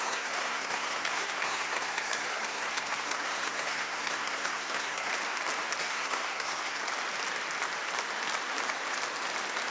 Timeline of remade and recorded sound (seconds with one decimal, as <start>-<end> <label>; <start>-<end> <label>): 0.0-5.1 remade; 5.1-5.8 recorded; 5.8-6.8 remade; 6.8-9.7 recorded